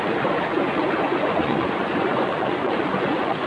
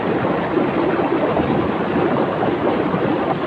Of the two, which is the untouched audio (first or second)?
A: second